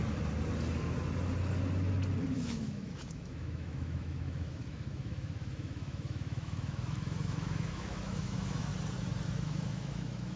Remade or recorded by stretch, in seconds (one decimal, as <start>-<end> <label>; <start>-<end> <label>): 0.0-2.3 recorded; 2.3-8.7 remade; 8.7-9.3 recorded; 9.3-10.4 remade